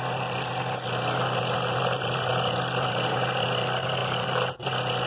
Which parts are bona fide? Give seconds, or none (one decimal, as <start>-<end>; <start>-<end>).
0.0-5.1